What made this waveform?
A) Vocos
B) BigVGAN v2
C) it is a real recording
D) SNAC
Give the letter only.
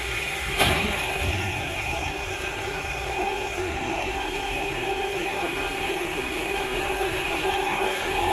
D